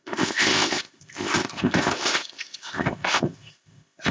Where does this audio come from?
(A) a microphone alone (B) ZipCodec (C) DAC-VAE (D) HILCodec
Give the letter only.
B